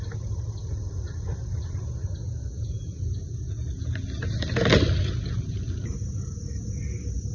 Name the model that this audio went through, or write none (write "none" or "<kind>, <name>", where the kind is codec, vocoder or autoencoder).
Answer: none